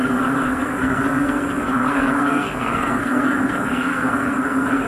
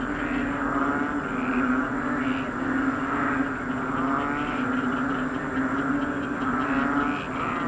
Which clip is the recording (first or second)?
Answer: second